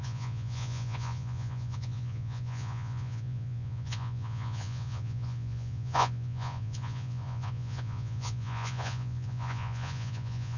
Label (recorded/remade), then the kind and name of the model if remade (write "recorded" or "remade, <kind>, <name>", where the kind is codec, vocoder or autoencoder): remade, vocoder, Vocos